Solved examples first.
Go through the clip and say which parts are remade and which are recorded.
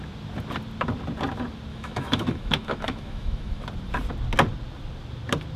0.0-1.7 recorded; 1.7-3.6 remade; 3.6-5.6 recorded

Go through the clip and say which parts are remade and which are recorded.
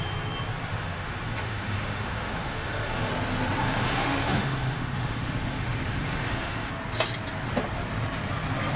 0.0-0.7 recorded; 0.7-3.1 remade; 3.1-3.6 recorded; 3.6-6.7 remade; 6.7-8.8 recorded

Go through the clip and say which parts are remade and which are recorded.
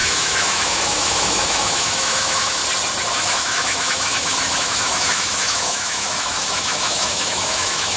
0.0-2.6 remade; 2.6-3.1 recorded; 3.1-8.0 remade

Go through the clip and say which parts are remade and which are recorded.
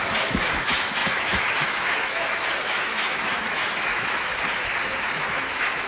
0.0-4.3 remade; 4.3-5.0 recorded; 5.0-5.9 remade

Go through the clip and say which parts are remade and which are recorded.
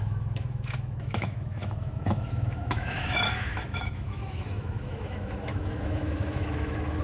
0.0-7.0 remade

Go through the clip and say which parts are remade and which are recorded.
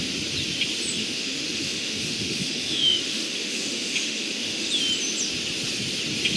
0.0-1.0 recorded; 1.0-4.7 remade; 4.7-6.4 recorded